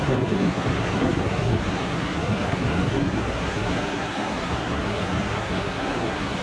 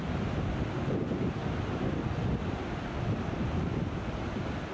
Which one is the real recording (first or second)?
second